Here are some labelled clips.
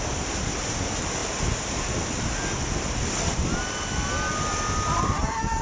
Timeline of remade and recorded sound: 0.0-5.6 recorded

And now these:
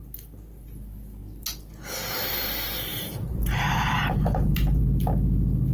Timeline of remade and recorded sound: 0.0-2.9 recorded; 2.9-4.8 remade; 4.8-5.7 recorded

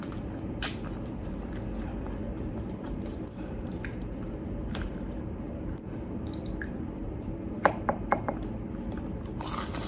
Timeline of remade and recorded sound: 0.0-2.2 recorded; 2.2-6.2 remade; 6.2-7.0 recorded; 7.0-8.3 remade; 8.3-9.9 recorded

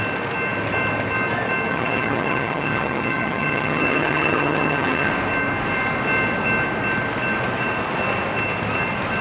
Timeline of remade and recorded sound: 0.0-1.7 recorded; 1.7-5.1 remade; 5.1-9.2 recorded

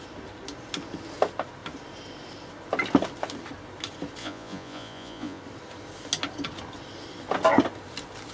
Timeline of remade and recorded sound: 0.0-4.2 recorded; 4.2-5.4 remade; 5.4-8.3 recorded

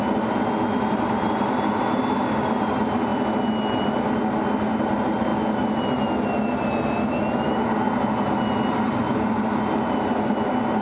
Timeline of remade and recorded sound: 0.0-10.8 recorded